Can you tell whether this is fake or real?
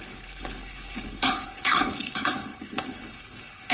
fake